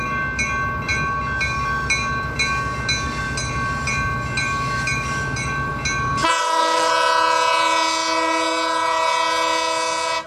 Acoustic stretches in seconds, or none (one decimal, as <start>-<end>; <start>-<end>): 0.0-6.4; 6.9-10.3